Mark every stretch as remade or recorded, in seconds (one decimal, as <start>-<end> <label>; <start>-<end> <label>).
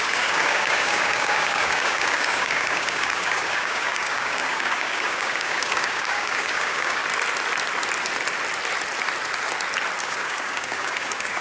0.0-7.0 remade; 7.0-10.0 recorded; 10.0-11.4 remade